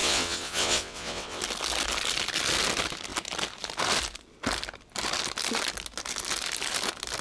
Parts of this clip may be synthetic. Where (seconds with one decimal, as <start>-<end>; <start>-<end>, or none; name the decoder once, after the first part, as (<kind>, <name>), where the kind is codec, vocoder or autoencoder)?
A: 0.0-1.4 (vocoder, WaveNeXt)